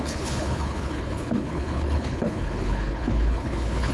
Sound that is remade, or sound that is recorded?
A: remade